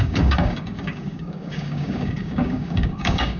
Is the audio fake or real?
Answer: fake